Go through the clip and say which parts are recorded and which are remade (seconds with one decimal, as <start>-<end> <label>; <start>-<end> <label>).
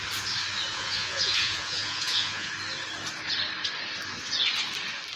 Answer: 0.0-0.7 recorded; 0.7-2.5 remade; 2.5-5.2 recorded